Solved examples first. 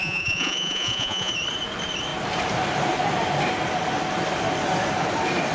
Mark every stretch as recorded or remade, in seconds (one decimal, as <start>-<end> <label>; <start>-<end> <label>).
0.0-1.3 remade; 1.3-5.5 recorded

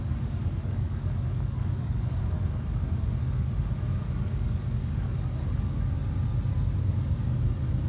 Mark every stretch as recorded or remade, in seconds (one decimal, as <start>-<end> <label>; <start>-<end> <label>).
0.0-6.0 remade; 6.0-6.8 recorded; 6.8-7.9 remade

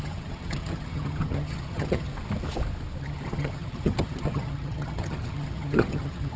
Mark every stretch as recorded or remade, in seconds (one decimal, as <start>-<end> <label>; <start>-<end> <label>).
0.0-2.1 remade; 2.1-3.0 recorded; 3.0-6.4 remade